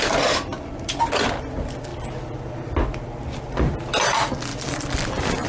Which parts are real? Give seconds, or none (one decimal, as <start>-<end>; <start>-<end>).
0.0-0.5; 1.5-1.9; 2.5-4.5